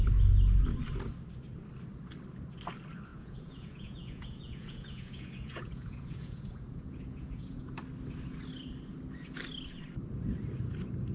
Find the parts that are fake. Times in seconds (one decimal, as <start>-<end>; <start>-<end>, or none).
3.1-7.7